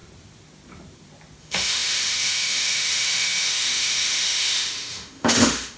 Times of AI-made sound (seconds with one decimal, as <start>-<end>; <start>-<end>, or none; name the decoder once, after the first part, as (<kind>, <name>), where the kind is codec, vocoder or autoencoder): 1.4-5.8 (autoencoder, DAC-VAE)